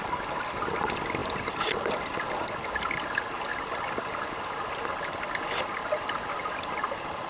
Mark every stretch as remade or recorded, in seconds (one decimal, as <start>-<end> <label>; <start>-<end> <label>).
0.0-7.3 recorded